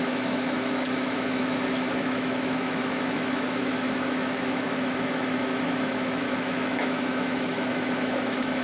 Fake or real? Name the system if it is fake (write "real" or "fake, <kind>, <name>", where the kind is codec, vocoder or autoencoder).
fake, autoencoder, DAC-VAE